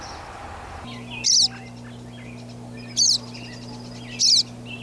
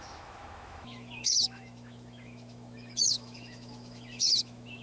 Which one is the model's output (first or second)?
second